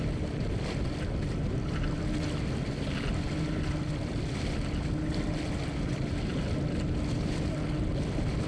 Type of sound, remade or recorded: recorded